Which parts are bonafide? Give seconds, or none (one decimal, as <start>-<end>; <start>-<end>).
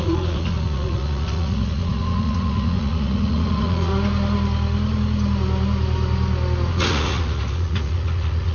3.9-6.7